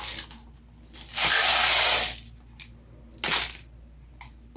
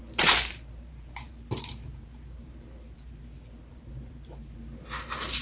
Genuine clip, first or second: first